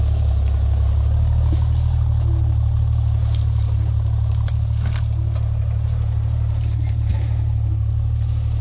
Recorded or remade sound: recorded